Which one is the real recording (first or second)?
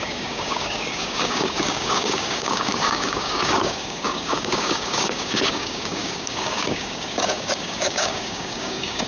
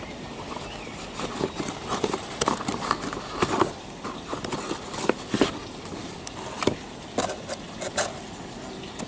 second